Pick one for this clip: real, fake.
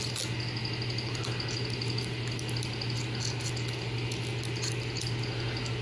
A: real